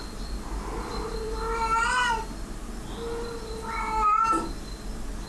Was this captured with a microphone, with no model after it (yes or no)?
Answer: yes